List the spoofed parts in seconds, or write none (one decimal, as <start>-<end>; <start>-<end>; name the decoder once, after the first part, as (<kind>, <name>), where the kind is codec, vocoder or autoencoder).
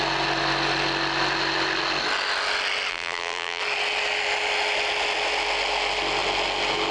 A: 2.9-3.6 (vocoder, BigVGAN v2)